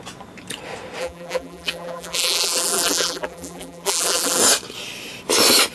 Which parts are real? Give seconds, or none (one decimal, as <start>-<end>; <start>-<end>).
0.0-1.0; 4.4-5.7